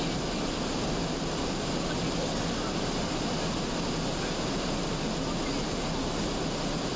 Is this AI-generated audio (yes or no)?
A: no